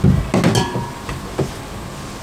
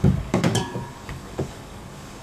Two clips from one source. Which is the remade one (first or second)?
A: second